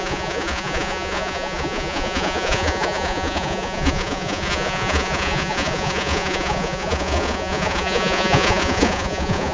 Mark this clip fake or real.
fake